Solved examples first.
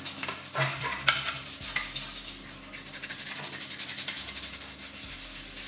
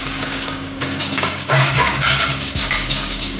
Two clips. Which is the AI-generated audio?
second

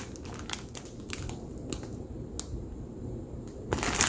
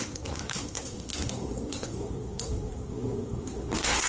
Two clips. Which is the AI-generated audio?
second